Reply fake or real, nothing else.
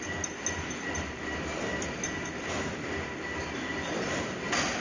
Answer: real